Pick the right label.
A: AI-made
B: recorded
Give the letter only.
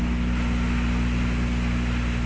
B